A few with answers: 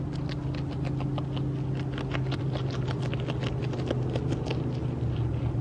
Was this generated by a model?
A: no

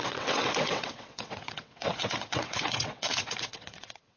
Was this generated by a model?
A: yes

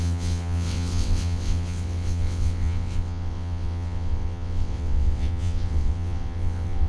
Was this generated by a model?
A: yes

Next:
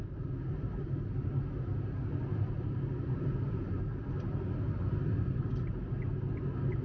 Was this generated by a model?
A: no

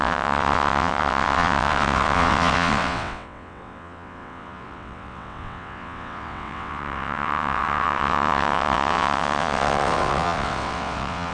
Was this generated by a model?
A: yes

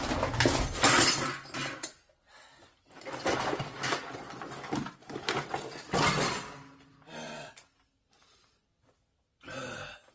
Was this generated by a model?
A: no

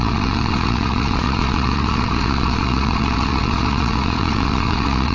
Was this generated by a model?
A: yes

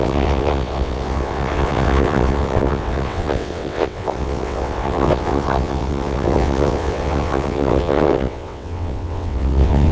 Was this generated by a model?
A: yes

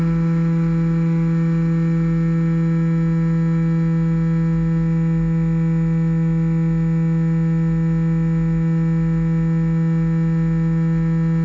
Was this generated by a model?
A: no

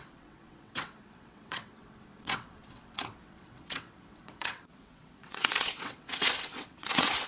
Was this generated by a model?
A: yes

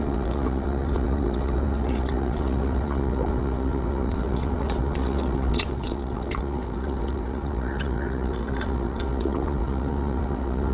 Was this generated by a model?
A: yes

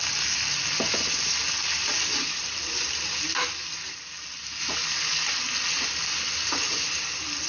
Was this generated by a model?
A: no